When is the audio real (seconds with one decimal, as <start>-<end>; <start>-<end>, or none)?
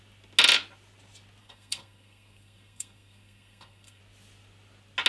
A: 0.0-1.4; 4.0-5.1